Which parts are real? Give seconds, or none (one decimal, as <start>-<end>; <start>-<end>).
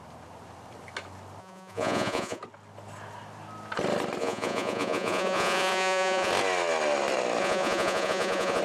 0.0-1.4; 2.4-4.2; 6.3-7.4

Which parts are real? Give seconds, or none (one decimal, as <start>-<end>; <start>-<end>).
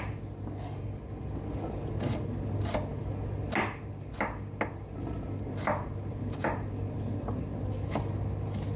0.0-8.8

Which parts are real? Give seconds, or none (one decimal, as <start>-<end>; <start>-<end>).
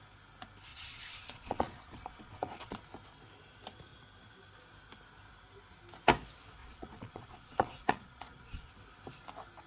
0.0-0.7; 2.8-6.6; 8.7-9.7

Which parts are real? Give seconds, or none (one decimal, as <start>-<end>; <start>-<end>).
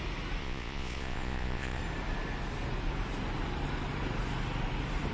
0.0-0.4; 1.8-5.1